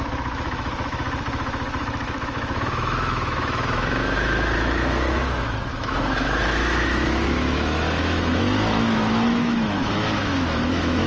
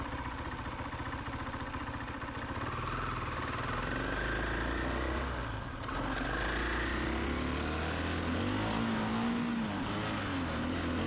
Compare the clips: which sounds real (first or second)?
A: second